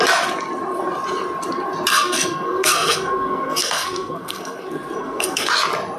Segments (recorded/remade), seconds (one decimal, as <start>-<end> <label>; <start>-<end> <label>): 0.0-1.9 recorded; 1.9-5.5 remade; 5.5-6.0 recorded